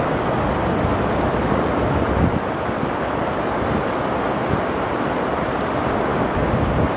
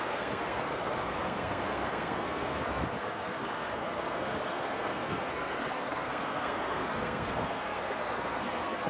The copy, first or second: second